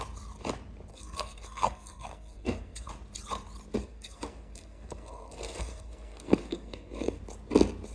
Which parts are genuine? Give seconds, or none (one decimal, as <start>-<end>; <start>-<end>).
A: 0.0-0.9; 2.9-3.8; 7.2-7.9